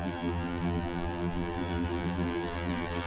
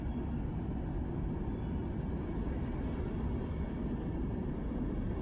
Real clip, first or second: second